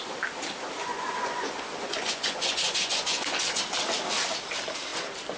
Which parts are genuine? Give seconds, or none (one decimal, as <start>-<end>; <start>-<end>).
0.0-0.8; 3.6-5.4